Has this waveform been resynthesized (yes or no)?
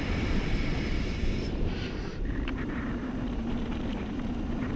yes